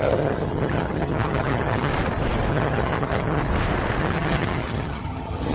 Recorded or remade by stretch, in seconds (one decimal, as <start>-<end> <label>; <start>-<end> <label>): 0.0-1.9 remade; 1.9-2.5 recorded; 2.5-3.4 remade; 3.4-4.0 recorded; 4.0-5.5 remade